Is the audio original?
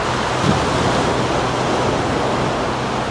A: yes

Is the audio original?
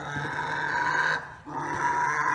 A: yes